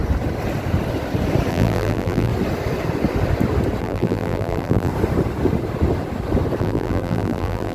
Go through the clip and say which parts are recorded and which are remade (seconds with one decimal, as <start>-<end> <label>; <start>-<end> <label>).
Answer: 0.0-1.5 recorded; 1.5-2.3 remade; 2.3-3.8 recorded; 3.8-4.9 remade; 4.9-6.6 recorded; 6.6-7.7 remade

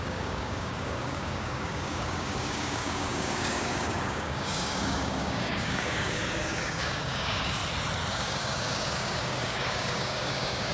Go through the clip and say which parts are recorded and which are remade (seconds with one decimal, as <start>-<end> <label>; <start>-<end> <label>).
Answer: 0.0-7.6 remade; 7.6-8.1 recorded; 8.1-10.7 remade